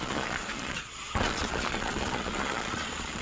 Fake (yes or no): yes